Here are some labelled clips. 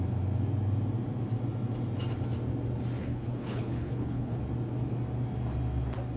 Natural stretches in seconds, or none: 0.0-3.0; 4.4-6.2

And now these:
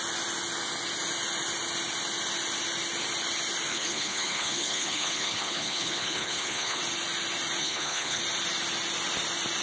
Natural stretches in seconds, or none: 0.0-3.7; 6.8-7.6; 8.2-9.6

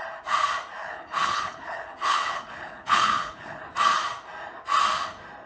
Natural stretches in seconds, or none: 0.0-0.8; 3.6-5.5

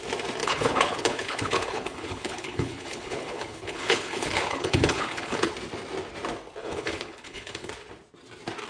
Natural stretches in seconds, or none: 0.0-0.4; 5.5-6.6; 7.7-8.7

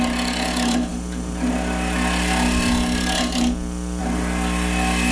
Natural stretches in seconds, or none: 0.0-5.1